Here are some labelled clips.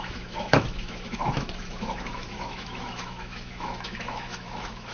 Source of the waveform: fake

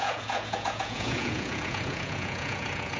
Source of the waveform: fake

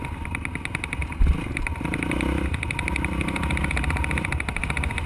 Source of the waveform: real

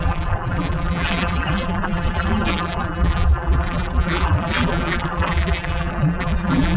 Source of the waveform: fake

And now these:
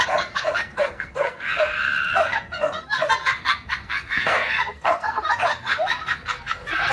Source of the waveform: fake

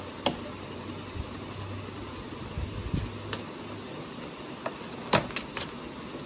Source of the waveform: real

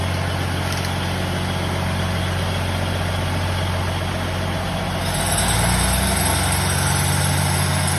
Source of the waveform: real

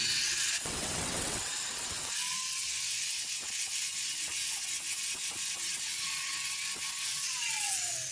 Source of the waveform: fake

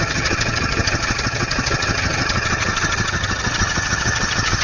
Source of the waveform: fake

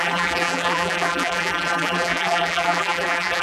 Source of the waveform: fake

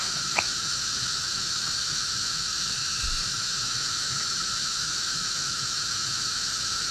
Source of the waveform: fake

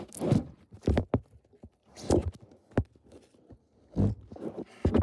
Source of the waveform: real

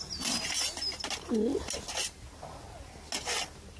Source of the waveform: real